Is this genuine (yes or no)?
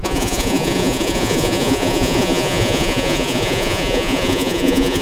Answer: no